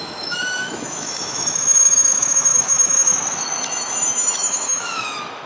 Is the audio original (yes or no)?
no